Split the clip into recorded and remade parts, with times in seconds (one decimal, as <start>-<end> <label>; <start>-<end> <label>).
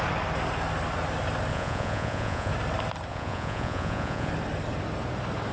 0.0-1.5 recorded; 1.5-2.5 remade; 2.5-3.1 recorded; 3.1-4.3 remade; 4.3-5.5 recorded